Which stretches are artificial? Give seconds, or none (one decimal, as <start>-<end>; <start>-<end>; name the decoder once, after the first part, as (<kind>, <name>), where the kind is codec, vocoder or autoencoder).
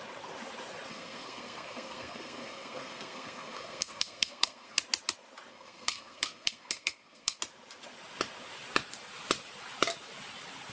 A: 0.9-4.8 (codec, SNAC); 5.5-7.4